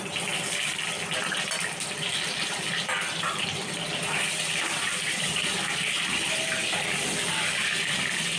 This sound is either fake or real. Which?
fake